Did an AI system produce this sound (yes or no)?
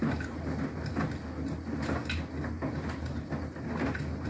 no